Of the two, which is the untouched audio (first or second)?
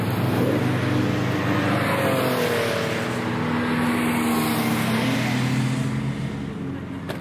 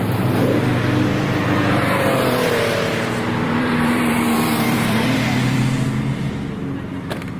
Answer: first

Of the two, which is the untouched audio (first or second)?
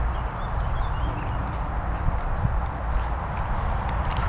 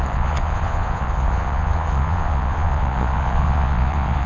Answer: first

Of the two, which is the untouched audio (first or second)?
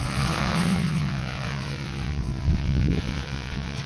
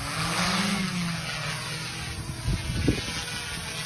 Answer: second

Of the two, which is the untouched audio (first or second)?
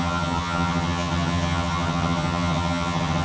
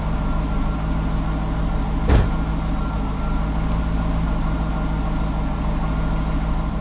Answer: second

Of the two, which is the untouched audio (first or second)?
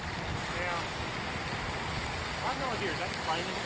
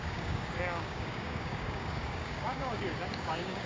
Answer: first